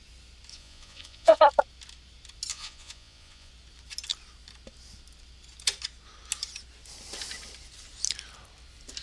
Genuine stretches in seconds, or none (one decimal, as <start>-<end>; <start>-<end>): 0.0-0.5; 1.4-2.5; 3.5-9.0

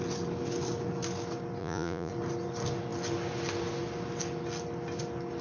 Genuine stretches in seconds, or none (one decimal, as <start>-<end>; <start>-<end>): 0.0-1.6; 2.1-5.4

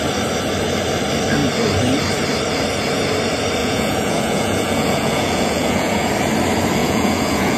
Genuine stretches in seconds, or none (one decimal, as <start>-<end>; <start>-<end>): 0.0-3.6; 6.1-6.8

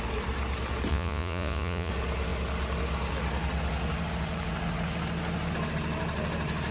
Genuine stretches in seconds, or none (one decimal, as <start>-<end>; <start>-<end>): 0.0-0.9; 1.9-6.7

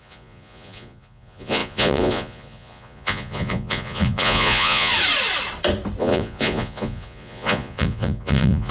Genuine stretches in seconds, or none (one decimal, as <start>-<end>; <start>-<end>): 4.9-6.0